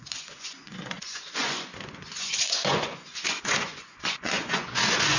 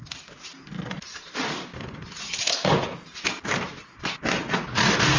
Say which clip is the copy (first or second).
first